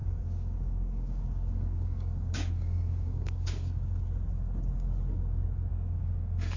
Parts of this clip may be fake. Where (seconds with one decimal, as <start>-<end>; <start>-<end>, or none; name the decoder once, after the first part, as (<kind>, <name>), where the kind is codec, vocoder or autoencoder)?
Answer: 0.0-4.0 (codec, DAC); 5.7-6.6